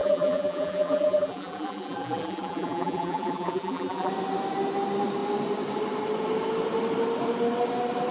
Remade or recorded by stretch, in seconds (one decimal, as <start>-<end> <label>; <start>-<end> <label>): 0.0-4.1 remade; 4.1-8.1 recorded